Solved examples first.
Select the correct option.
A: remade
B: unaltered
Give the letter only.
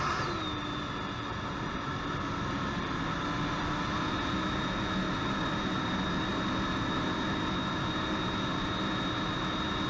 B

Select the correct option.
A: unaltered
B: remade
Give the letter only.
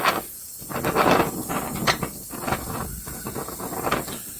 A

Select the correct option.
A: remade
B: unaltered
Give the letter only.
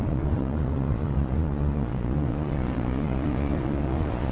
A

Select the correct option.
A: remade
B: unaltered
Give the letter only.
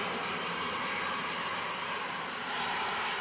B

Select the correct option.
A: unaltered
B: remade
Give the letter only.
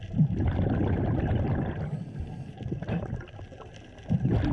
A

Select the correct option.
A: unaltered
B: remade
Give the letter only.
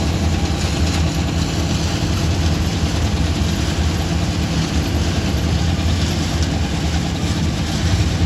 A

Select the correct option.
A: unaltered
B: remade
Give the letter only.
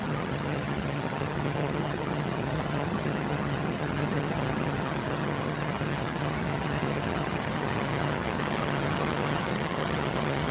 B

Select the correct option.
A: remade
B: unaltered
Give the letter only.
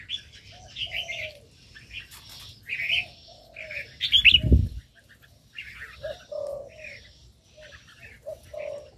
B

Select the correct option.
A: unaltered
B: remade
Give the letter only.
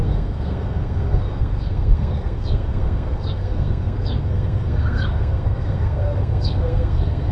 B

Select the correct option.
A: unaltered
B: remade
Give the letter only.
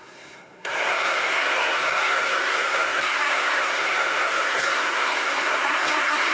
B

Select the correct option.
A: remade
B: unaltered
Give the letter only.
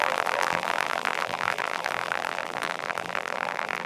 A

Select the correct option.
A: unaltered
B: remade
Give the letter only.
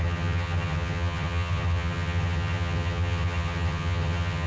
B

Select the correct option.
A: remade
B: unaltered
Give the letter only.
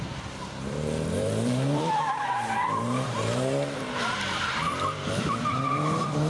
A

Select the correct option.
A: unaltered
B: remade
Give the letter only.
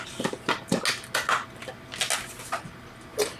A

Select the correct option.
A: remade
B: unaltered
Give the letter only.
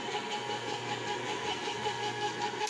A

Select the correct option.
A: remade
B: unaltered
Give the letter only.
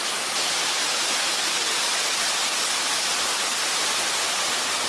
B